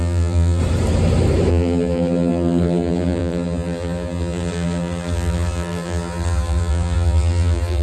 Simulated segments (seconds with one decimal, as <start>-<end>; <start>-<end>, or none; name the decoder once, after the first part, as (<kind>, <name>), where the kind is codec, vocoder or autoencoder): 0.0-0.6 (vocoder, BigVGAN v2); 1.5-7.8